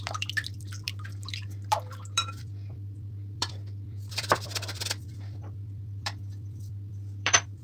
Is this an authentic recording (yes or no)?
no